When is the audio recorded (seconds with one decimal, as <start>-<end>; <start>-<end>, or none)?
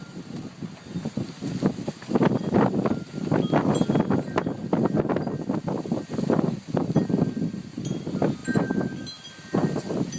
0.0-10.2